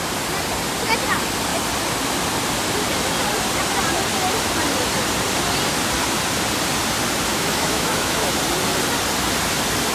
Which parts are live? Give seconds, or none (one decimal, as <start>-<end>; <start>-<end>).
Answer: 0.0-7.3; 8.4-9.9